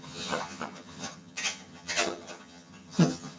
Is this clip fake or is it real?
fake